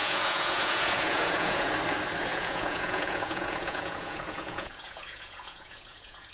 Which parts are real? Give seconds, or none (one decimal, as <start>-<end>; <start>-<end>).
1.7-2.3